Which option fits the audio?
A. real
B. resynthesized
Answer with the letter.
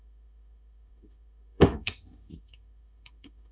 B